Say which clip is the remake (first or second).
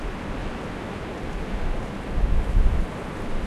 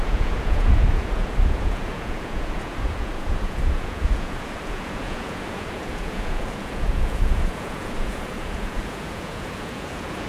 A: second